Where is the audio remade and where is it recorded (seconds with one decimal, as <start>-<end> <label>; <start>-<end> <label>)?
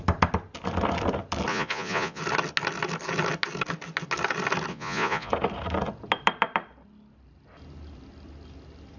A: 0.0-1.5 recorded; 1.5-2.2 remade; 2.2-4.7 recorded; 4.7-5.3 remade; 5.3-9.0 recorded